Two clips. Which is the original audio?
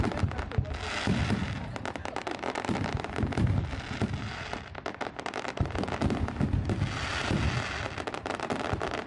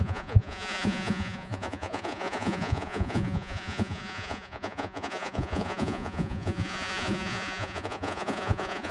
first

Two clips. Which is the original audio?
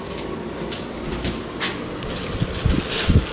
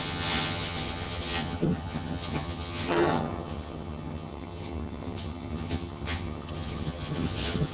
first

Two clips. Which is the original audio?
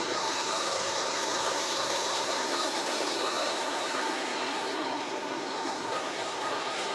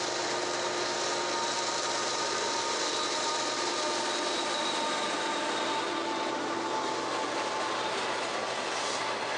second